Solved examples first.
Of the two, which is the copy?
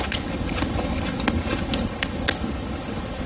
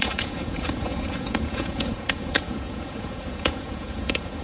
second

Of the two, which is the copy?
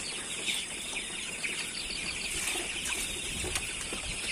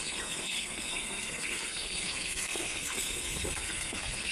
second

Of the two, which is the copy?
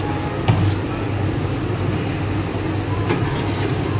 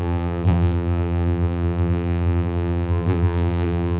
second